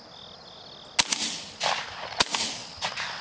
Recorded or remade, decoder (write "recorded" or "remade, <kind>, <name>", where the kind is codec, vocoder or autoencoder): recorded